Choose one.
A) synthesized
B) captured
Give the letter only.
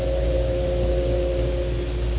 B